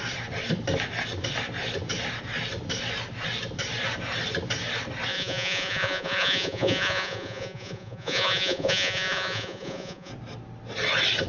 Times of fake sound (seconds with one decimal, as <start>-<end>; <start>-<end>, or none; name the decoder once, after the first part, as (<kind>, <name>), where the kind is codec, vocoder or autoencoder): 5.1-10.1 (vocoder, Vocos)